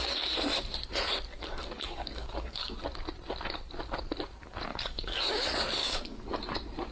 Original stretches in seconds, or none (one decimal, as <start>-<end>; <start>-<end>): 0.0-1.3; 2.7-4.7; 5.3-5.8; 6.3-6.9